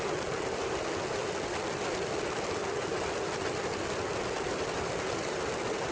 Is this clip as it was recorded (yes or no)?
no